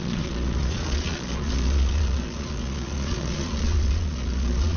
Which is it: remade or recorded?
remade